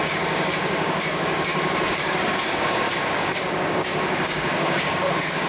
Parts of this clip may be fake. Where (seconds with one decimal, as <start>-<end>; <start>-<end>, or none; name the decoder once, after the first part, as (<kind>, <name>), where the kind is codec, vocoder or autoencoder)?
0.0-5.5 (codec, DAC)